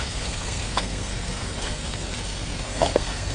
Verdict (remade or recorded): remade